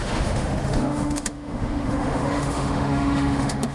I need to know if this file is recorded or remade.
remade